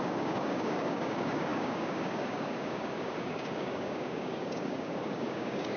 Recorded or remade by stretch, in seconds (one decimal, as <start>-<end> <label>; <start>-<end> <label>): 0.0-5.8 remade